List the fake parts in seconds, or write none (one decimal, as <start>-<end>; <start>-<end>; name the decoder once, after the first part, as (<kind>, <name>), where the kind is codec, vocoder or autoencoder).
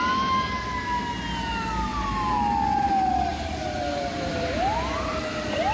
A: 1.9-2.4 (vocoder, BigVGAN v2); 3.3-5.2